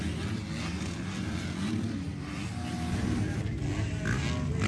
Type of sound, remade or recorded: recorded